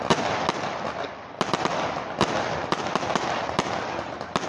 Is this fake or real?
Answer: real